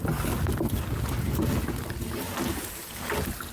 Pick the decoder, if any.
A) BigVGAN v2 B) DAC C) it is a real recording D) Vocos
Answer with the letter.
C